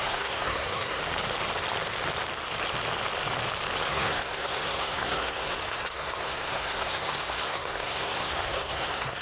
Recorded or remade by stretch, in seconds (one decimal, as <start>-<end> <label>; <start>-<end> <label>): 0.0-1.0 remade; 1.0-3.9 recorded; 3.9-9.2 remade